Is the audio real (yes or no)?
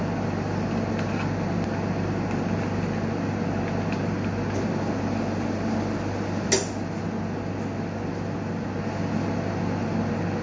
yes